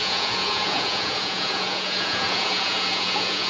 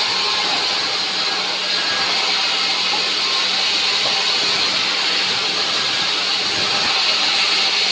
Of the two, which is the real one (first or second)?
second